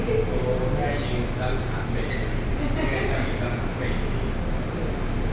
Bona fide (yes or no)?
yes